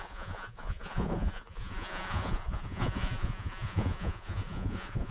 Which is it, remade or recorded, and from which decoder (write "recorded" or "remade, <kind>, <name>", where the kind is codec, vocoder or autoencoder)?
remade, vocoder, Vocos